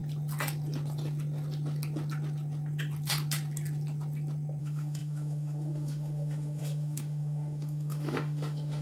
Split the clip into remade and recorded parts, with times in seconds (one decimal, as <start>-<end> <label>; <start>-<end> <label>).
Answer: 0.0-4.6 recorded; 4.6-8.8 remade